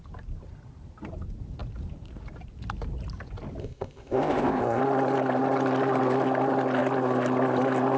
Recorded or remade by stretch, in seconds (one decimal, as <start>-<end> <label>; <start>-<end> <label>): 0.0-3.6 recorded; 3.6-4.8 remade; 4.8-8.0 recorded